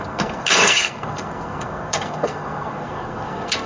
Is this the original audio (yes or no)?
no